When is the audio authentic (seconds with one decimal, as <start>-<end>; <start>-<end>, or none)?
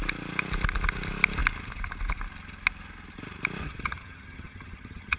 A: 0.0-3.6